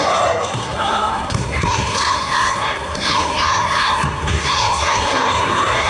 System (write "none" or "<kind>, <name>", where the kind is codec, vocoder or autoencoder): codec, SNAC